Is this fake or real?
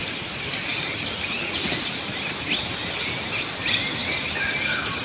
real